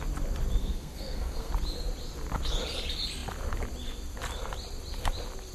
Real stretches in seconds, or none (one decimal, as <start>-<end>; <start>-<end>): 0.0-0.6; 1.5-5.5